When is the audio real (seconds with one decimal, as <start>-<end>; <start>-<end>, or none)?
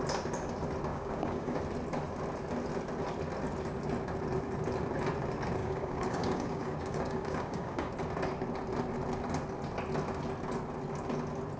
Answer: 0.0-0.9; 1.6-5.6; 7.9-11.6